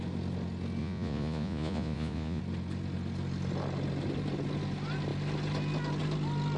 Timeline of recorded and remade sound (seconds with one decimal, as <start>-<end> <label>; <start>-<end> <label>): 0.0-0.8 recorded; 0.8-2.4 remade; 2.4-6.6 recorded